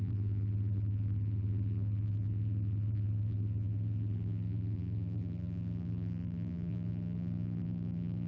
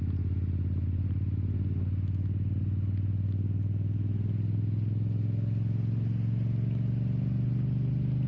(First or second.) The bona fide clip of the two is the second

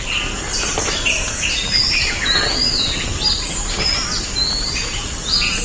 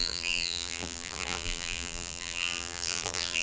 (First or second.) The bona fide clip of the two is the first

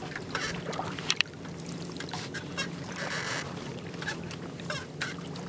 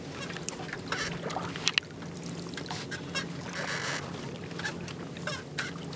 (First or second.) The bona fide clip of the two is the second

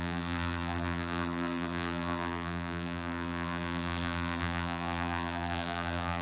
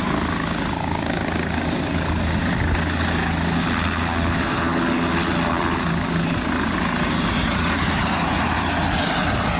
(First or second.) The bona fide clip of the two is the second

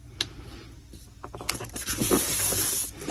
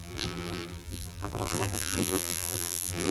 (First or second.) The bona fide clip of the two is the first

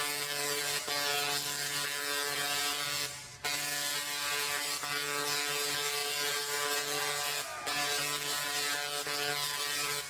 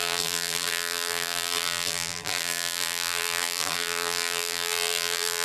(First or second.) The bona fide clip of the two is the first